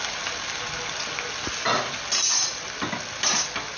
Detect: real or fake real